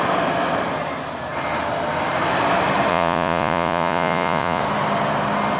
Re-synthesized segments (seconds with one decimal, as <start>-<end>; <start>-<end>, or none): 2.9-4.6